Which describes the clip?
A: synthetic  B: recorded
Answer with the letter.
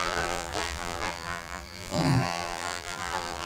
A